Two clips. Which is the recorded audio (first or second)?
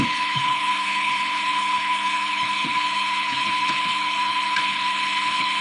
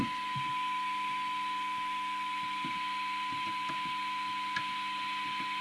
second